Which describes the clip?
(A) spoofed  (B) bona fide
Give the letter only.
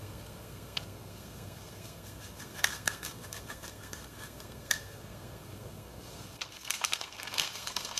A